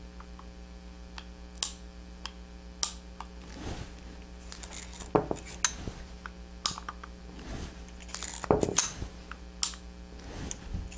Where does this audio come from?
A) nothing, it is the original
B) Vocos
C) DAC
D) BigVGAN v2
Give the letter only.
A